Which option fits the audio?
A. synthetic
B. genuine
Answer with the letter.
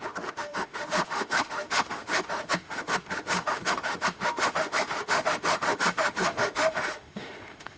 A